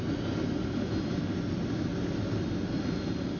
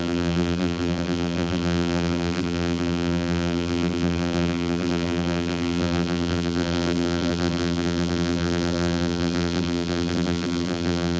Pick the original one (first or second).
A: first